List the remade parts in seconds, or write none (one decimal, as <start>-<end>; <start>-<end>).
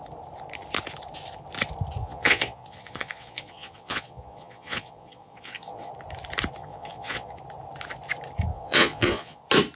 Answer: 2.0-5.9; 6.6-7.4; 8.5-9.4